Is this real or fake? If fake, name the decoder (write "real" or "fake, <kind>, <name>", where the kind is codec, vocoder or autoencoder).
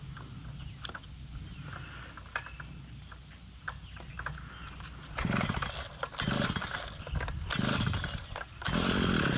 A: real